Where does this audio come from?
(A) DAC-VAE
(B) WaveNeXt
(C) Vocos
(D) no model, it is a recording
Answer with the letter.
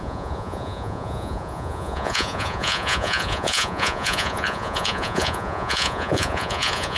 C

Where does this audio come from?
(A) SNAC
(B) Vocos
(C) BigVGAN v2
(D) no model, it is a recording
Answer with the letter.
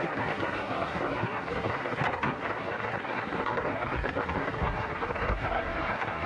A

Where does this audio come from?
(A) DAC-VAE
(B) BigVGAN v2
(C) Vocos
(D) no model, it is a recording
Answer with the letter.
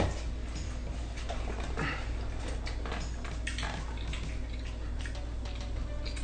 D